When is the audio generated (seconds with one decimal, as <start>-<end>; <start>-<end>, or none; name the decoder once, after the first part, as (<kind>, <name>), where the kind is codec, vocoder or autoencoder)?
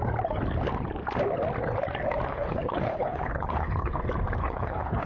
2.3-4.0 (codec, HILCodec); 4.4-5.1